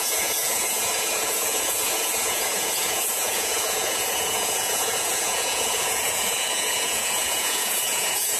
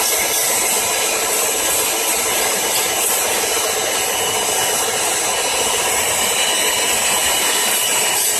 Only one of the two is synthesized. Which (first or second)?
first